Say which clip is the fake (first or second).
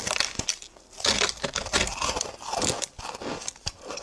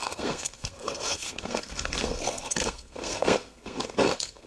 second